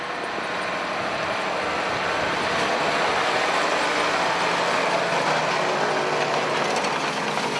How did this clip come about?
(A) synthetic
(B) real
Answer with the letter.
B